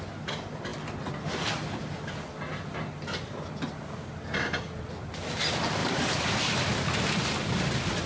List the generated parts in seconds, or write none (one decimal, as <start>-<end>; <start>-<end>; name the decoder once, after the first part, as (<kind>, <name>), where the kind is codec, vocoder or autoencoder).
none